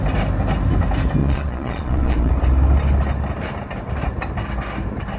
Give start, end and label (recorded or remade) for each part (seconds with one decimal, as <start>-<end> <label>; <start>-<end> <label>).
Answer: 0.0-1.2 recorded; 1.2-2.3 remade; 2.3-5.2 recorded